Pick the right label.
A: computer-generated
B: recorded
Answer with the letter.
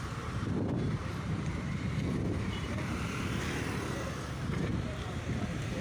A